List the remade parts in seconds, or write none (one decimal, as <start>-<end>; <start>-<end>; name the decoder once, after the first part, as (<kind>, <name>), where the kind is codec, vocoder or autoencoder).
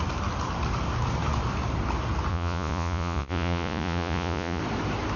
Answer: 2.3-4.6 (vocoder, Vocos)